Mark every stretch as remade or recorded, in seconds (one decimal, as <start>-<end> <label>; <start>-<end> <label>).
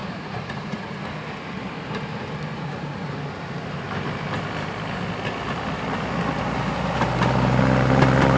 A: 0.0-1.0 remade; 1.0-2.5 recorded; 2.5-3.1 remade; 3.1-8.4 recorded